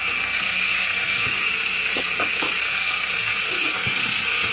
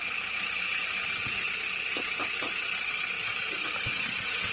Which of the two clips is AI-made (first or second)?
first